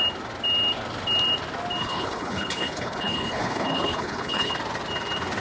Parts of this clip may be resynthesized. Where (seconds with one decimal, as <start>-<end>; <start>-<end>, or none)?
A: 1.8-4.5